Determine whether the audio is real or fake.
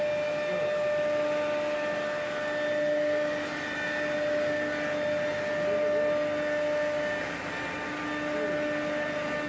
real